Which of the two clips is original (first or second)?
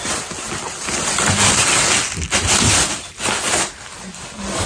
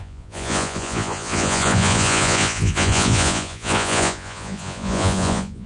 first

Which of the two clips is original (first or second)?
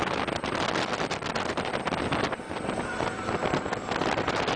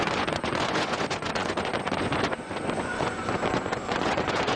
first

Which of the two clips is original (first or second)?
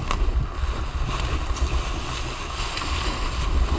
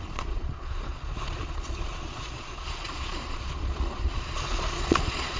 first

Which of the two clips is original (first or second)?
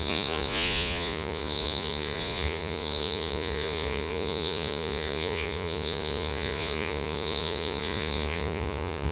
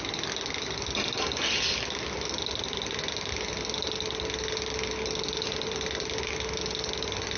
second